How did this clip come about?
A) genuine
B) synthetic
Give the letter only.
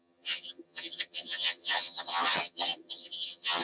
B